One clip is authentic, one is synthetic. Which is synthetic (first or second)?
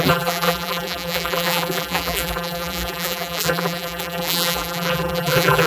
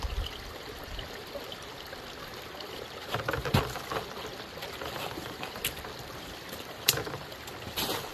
first